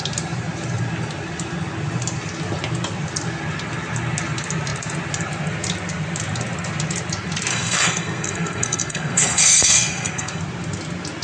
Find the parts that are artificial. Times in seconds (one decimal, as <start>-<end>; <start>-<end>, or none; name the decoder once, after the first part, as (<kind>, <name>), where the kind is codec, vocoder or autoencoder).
7.5-10.4 (codec, SNAC)